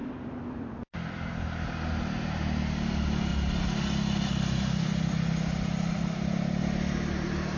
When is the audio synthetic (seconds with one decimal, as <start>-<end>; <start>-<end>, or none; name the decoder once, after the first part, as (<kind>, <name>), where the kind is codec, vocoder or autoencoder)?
0.0-1.3 (vocoder, BigVGAN v2)